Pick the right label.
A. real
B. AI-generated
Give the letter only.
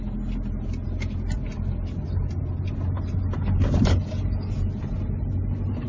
A